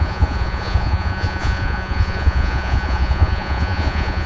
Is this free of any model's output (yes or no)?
no